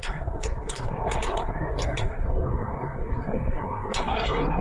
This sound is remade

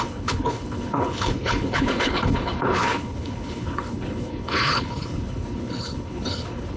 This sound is remade